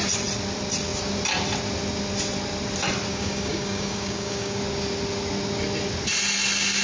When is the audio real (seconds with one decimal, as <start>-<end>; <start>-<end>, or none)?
0.0-3.1; 4.6-6.8